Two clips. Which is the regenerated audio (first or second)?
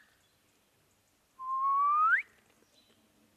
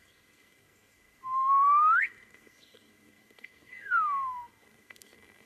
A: second